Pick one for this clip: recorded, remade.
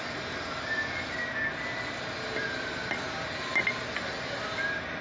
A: recorded